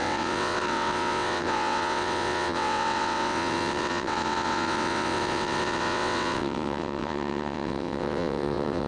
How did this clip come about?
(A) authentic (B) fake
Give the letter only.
B